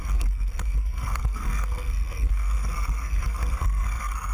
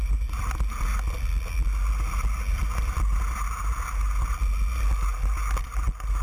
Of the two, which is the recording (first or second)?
second